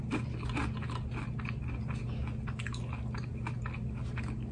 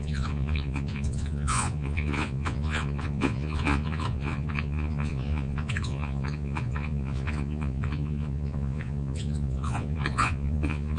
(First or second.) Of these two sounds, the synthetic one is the second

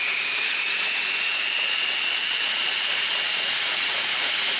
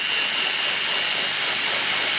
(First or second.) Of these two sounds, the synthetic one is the first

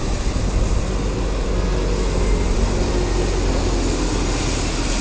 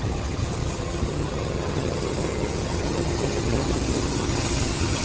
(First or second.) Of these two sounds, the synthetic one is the second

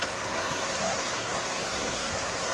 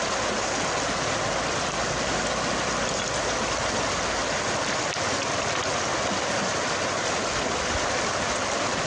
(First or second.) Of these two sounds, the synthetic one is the first